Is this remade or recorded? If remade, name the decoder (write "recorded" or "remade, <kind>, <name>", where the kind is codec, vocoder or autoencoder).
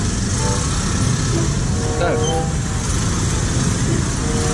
recorded